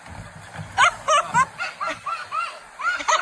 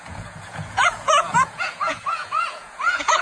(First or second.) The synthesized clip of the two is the second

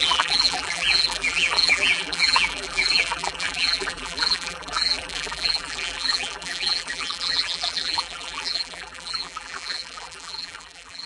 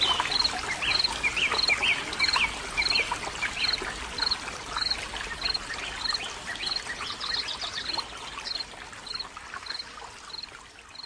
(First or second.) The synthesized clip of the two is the first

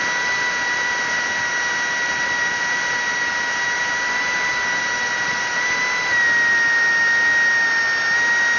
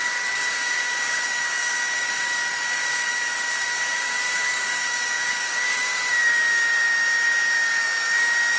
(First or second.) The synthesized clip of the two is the second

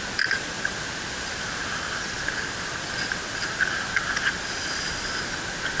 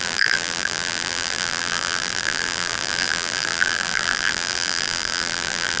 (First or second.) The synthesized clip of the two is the second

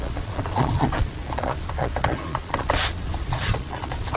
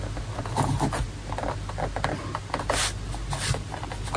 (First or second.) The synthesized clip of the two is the first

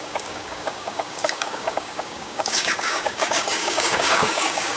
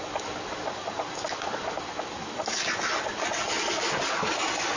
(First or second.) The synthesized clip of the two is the first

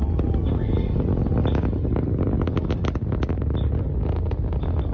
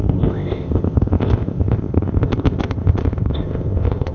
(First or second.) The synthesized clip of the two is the second